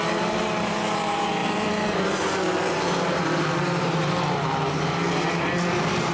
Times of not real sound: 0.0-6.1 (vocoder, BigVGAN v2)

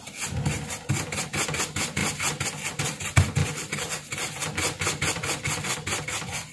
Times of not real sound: 3.4-6.5 (vocoder, BigVGAN v2)